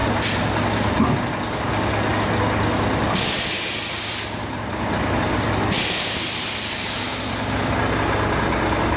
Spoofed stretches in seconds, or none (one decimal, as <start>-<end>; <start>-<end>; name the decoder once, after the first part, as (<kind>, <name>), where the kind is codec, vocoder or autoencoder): none